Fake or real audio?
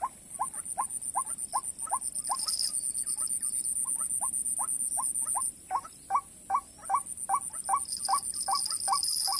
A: real